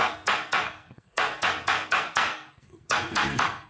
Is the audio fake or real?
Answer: fake